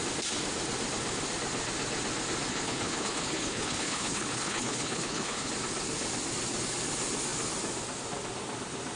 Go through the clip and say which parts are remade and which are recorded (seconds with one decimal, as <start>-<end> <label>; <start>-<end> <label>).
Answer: 0.0-2.5 recorded; 2.5-5.5 remade; 5.5-9.0 recorded

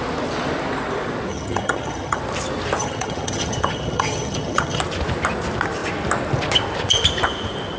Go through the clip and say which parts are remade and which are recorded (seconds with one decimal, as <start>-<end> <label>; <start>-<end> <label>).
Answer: 0.0-1.3 recorded; 1.3-2.2 remade; 2.2-2.8 recorded; 2.8-4.8 remade; 4.8-7.8 recorded

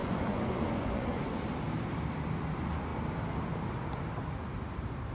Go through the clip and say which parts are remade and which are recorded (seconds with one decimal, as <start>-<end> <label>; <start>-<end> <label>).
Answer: 0.0-1.4 remade; 1.4-5.1 recorded

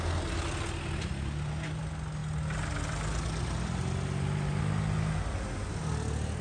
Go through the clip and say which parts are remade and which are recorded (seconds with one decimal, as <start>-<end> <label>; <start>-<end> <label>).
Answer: 0.0-6.4 recorded

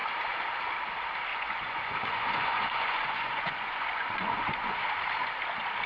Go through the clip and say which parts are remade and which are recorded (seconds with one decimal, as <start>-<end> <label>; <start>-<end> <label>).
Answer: 0.0-1.3 recorded; 1.3-4.8 remade; 4.8-5.9 recorded

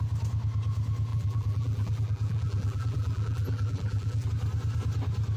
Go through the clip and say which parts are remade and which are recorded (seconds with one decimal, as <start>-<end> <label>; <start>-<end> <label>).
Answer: 0.0-1.1 recorded; 1.1-4.3 remade; 4.3-5.4 recorded